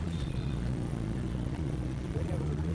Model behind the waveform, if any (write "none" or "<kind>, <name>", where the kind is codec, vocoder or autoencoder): vocoder, Vocos